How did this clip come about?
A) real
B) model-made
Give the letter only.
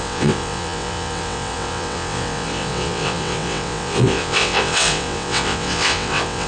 B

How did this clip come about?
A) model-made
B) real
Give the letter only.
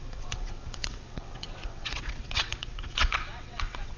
A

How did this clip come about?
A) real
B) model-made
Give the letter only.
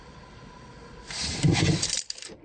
A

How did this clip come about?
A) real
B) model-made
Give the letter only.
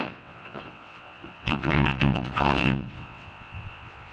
B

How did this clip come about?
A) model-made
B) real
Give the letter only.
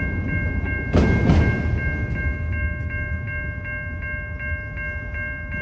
B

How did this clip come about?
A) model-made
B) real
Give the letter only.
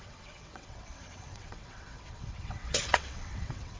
A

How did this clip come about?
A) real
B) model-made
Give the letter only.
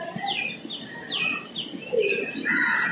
A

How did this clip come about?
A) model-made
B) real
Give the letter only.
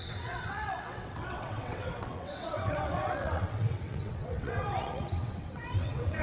A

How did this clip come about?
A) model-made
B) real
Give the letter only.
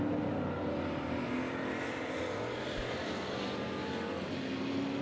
B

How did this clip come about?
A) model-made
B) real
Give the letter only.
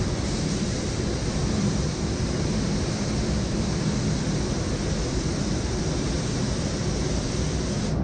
B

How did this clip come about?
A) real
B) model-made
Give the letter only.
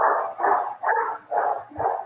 A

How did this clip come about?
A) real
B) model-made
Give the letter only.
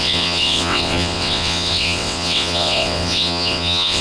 B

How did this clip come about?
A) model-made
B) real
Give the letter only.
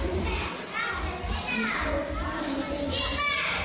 B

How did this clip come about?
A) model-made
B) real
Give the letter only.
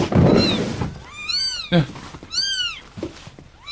B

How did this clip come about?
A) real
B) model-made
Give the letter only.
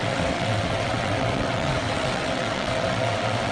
B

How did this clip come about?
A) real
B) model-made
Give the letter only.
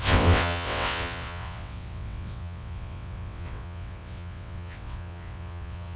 B